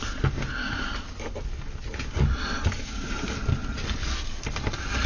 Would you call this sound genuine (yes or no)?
yes